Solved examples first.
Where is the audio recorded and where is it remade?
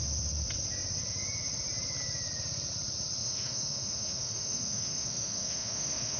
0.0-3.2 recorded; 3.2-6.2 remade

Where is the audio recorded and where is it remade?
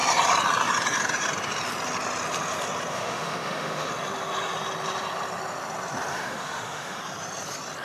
0.0-2.9 recorded; 2.9-3.9 remade; 3.9-6.1 recorded; 6.1-7.0 remade; 7.0-7.8 recorded